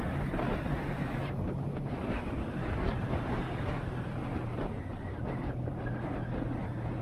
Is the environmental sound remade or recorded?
remade